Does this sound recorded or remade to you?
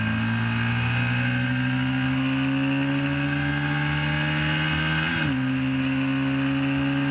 recorded